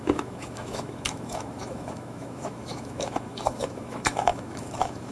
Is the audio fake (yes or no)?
yes